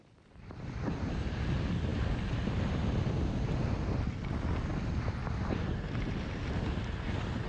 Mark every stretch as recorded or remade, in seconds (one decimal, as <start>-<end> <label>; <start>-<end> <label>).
0.0-7.5 recorded